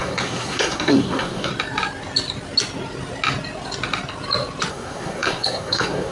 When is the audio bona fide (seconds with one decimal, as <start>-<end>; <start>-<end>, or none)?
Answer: 1.5-4.7